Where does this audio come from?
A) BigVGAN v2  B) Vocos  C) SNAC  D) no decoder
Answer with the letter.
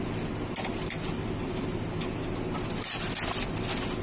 D